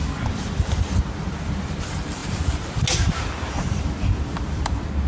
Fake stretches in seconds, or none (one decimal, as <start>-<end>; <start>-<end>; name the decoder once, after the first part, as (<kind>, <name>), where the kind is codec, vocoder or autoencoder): none